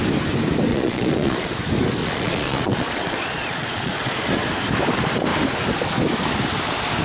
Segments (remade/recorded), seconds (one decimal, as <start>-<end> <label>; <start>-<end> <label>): 0.0-0.7 recorded; 0.7-1.5 remade; 1.5-2.0 recorded; 2.0-4.3 remade; 4.3-7.0 recorded